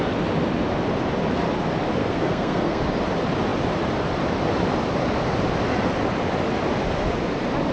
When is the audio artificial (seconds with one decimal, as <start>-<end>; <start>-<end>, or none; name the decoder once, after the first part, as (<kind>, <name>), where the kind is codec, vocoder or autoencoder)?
2.0-2.8 (codec, SNAC)